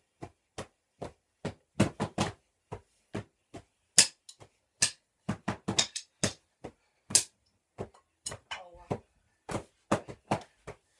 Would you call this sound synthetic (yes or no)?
no